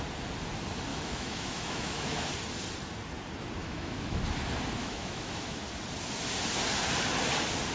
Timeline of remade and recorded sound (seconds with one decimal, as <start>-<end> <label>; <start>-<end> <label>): 0.0-0.9 recorded; 0.9-2.3 remade; 2.3-3.6 recorded; 3.6-4.2 remade; 4.2-4.8 recorded; 4.8-5.6 remade; 5.6-7.7 recorded